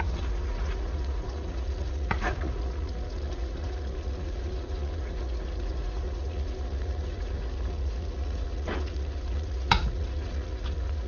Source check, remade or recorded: remade